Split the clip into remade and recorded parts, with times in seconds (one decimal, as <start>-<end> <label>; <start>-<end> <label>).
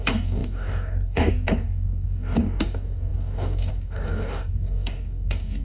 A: 0.0-5.6 remade